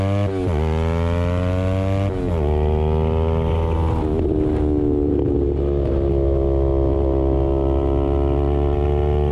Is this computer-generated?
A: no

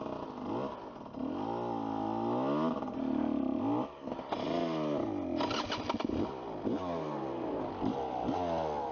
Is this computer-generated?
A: no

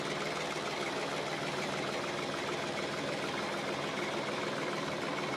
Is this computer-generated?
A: no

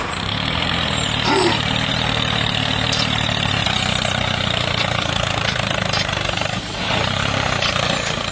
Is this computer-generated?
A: yes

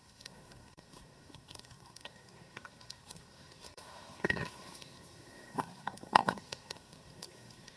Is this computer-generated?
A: yes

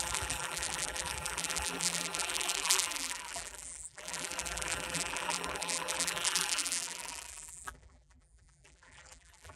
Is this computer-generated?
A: yes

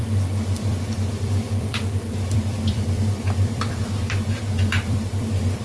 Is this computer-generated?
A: yes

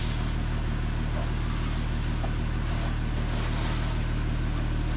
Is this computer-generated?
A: no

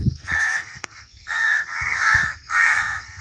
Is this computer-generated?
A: yes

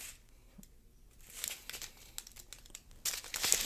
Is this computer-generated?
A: no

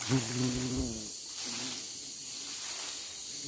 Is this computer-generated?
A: no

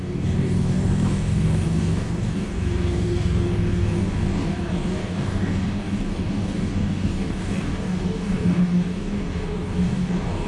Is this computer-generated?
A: yes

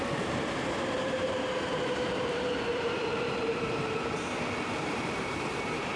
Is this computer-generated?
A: yes